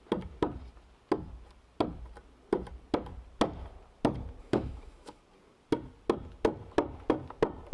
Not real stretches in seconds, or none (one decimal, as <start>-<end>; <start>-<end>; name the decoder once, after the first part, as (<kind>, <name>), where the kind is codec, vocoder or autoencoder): 4.4-5.2 (autoencoder, DAC-VAE)